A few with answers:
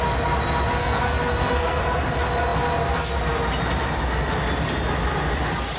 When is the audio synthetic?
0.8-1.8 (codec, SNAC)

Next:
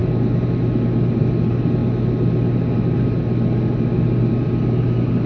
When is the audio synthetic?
none

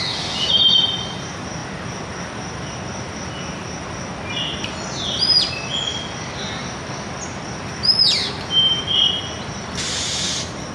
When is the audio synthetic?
none

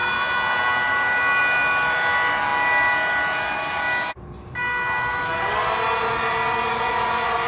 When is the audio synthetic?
none

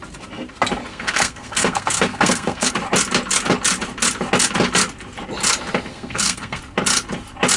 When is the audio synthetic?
0.9-2.7 (codec, SNAC); 5.9-6.6

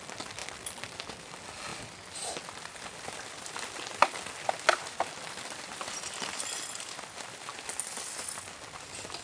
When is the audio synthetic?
none